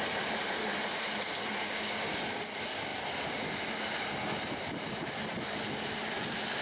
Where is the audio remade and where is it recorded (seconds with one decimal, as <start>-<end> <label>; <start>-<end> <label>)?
0.0-1.6 recorded; 1.6-2.2 remade; 2.2-6.6 recorded